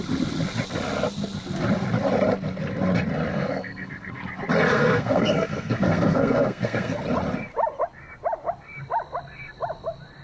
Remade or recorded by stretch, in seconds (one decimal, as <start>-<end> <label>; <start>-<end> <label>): 0.0-3.3 recorded; 3.3-4.2 remade; 4.2-4.7 recorded; 4.7-7.0 remade; 7.0-10.2 recorded

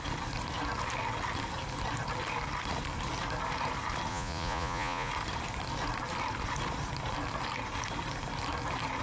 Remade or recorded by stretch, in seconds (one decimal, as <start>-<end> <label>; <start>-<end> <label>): 0.0-4.1 recorded; 4.1-5.1 remade; 5.1-9.0 recorded

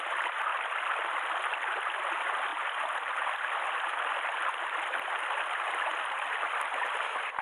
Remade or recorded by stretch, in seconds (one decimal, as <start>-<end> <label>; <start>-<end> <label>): 0.0-7.4 recorded

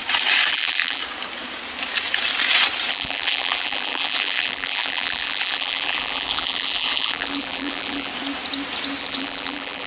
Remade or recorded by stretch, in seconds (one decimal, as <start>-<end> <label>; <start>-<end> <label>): 0.0-0.5 recorded; 0.5-1.0 remade; 1.0-2.9 recorded; 2.9-8.1 remade; 8.1-9.0 recorded; 9.0-9.9 remade

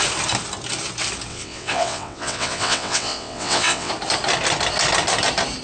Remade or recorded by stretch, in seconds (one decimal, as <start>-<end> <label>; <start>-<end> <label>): 0.0-1.3 recorded; 1.3-3.9 remade; 3.9-5.6 recorded

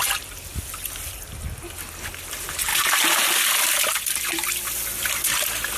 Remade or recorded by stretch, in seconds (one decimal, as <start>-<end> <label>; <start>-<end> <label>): 0.0-5.8 recorded

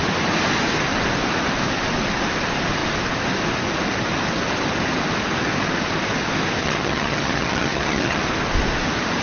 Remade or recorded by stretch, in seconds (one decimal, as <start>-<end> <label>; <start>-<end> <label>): 0.0-6.6 recorded; 6.6-8.2 remade; 8.2-9.2 recorded

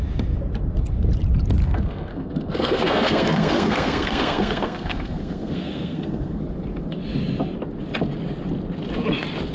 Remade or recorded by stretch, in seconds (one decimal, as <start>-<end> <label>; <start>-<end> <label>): 0.0-1.6 recorded; 1.6-6.4 remade; 6.4-9.5 recorded